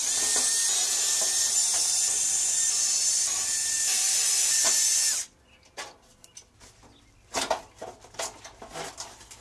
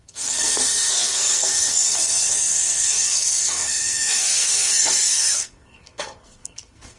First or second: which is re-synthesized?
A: second